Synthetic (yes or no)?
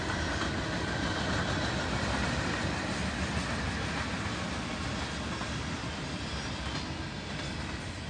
no